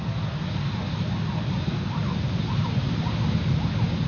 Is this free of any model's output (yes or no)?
yes